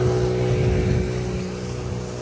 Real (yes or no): yes